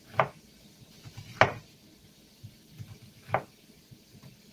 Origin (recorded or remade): recorded